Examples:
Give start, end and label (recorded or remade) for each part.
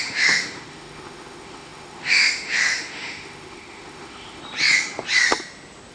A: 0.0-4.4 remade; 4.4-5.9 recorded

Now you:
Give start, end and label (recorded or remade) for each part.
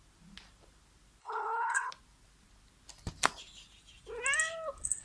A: 0.0-1.2 recorded; 1.2-1.9 remade; 1.9-5.0 recorded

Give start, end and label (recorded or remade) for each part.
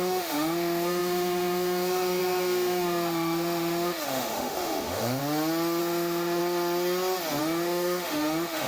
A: 0.0-5.2 remade; 5.2-5.8 recorded; 5.8-6.4 remade; 6.4-7.4 recorded; 7.4-8.7 remade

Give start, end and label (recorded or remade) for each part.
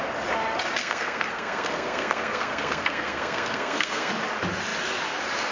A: 0.0-0.8 recorded; 0.8-4.1 remade; 4.1-5.5 recorded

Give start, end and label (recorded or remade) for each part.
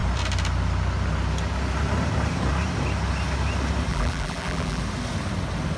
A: 0.0-3.9 recorded; 3.9-4.8 remade; 4.8-5.8 recorded